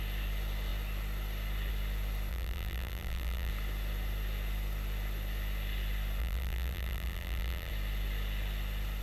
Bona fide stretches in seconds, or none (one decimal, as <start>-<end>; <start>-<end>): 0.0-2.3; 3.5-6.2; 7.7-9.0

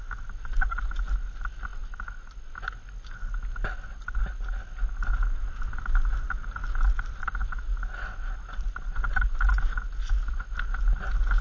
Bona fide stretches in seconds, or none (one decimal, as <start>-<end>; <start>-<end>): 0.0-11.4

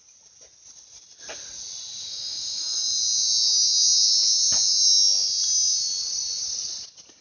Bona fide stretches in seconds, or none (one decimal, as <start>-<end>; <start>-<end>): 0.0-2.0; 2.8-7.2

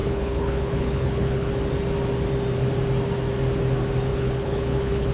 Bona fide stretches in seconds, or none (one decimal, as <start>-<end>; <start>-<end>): 1.5-4.1

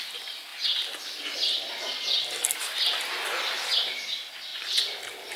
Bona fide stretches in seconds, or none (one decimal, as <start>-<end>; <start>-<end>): 0.0-5.4

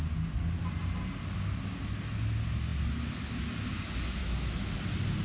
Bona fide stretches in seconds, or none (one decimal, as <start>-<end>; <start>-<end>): 0.0-4.2; 4.7-5.2